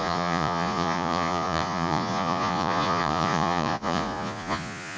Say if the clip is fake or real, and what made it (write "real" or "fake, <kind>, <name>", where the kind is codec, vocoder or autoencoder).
fake, vocoder, Vocos